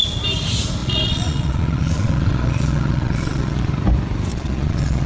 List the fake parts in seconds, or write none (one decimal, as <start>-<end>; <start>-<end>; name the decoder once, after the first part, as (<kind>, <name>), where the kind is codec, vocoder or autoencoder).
0.8-3.7 (vocoder, Vocos); 4.3-5.1